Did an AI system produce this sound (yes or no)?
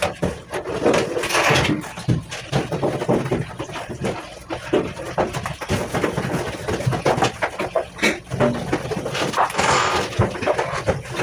no